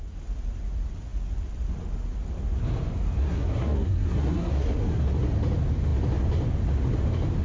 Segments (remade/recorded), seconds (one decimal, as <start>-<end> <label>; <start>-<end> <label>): 0.0-3.2 recorded; 3.2-5.0 remade; 5.0-7.4 recorded